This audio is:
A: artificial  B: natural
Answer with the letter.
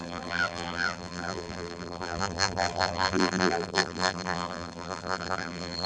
A